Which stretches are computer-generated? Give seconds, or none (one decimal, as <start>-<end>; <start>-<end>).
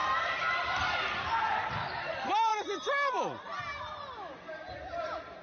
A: none